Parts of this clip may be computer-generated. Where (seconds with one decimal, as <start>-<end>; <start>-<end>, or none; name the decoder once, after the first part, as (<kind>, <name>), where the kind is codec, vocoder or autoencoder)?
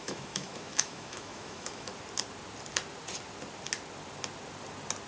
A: 0.0-1.9 (autoencoder, DAC-VAE)